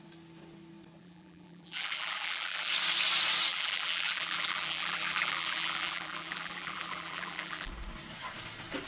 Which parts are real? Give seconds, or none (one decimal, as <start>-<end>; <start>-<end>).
0.0-1.0; 2.7-3.5; 7.7-8.9